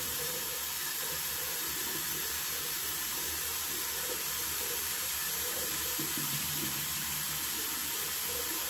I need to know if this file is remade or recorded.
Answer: remade